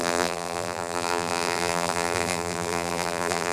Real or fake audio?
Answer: fake